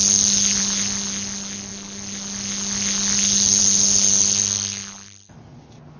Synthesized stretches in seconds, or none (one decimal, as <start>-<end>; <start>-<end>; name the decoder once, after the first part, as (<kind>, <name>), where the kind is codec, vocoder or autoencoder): none